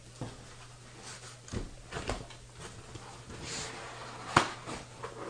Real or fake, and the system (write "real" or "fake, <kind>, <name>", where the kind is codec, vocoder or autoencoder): real